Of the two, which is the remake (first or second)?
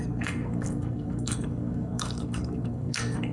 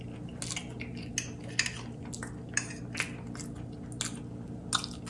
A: first